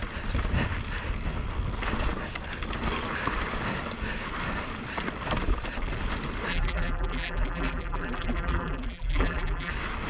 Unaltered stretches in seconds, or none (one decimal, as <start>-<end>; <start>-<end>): 0.0-6.5; 9.7-10.1

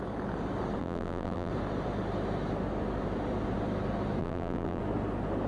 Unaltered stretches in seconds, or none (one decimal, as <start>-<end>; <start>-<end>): 0.0-0.8; 1.5-4.2; 4.8-5.5

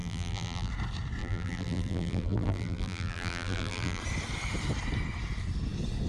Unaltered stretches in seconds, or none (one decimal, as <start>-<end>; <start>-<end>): 0.7-1.2; 4.0-6.1

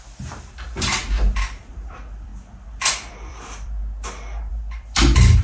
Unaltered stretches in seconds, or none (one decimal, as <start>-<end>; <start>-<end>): 1.0-1.7; 2.3-3.1; 3.8-4.5

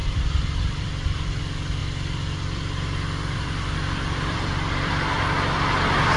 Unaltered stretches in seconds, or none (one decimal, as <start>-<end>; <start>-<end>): 1.4-1.8; 4.9-6.2

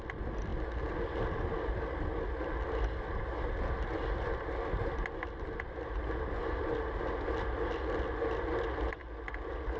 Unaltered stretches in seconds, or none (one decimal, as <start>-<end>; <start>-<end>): 0.0-9.8